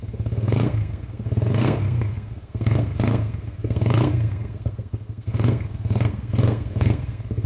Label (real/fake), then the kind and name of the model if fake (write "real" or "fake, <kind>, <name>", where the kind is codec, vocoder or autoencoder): fake, codec, SNAC